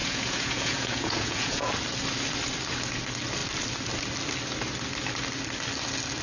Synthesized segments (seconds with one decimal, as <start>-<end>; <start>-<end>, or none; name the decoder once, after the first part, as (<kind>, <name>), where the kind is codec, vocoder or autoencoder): 0.0-1.7 (vocoder, Vocos)